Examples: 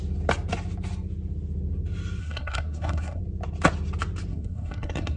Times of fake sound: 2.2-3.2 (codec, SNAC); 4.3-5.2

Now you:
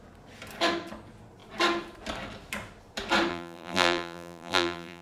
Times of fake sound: 3.3-5.0 (vocoder, BigVGAN v2)

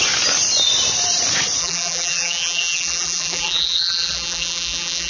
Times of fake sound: 1.6-5.1 (vocoder, BigVGAN v2)

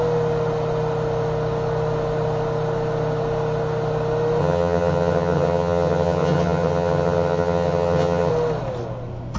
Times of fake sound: 4.4-8.3 (vocoder, HiFi-GAN)

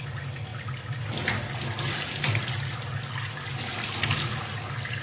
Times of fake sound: none

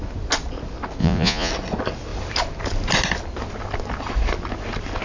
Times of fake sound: 1.0-1.5 (vocoder, Vocos)

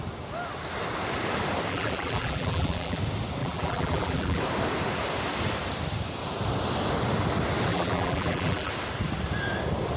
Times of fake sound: 1.7-3.0 (vocoder, BigVGAN v2); 3.4-4.4; 7.7-8.7